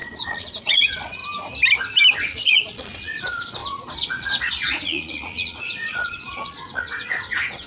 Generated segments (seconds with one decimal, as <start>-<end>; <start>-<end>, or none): 0.0-1.2; 2.2-7.7